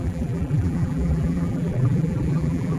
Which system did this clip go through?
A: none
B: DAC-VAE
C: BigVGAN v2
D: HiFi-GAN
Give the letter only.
C